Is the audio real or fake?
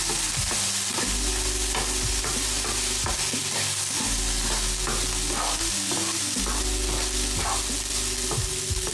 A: real